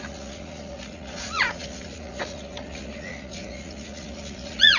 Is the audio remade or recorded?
remade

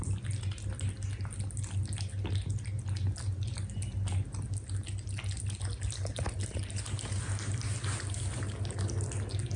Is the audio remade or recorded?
recorded